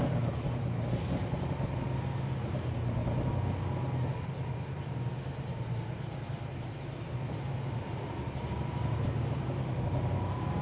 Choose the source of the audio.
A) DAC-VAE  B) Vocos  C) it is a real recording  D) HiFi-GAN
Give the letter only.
C